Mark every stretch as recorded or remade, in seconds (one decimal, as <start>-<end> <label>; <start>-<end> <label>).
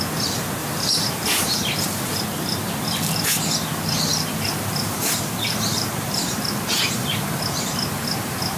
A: 0.0-0.6 recorded; 0.6-1.6 remade; 1.6-4.1 recorded; 4.1-7.4 remade; 7.4-8.6 recorded